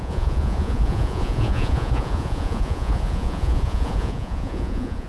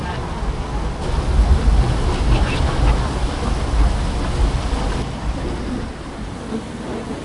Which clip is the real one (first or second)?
second